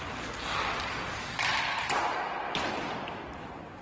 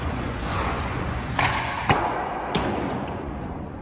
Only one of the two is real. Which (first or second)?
first